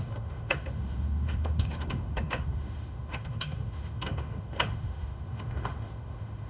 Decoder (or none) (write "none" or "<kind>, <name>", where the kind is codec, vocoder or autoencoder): autoencoder, DAC-VAE